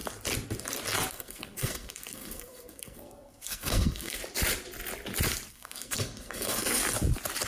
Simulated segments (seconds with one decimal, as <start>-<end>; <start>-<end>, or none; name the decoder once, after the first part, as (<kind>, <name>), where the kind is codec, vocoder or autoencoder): 1.1-4.2 (codec, SNAC); 5.5-6.8